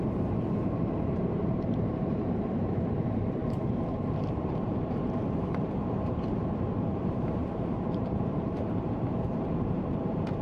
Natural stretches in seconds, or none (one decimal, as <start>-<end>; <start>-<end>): none